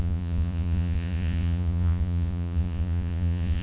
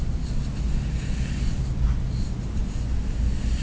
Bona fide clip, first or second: second